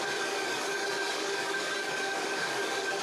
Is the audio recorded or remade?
remade